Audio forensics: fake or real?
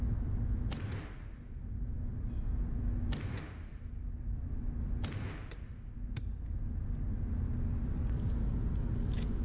real